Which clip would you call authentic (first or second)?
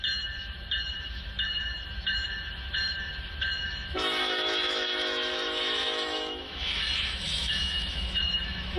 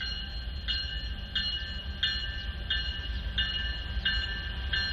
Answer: second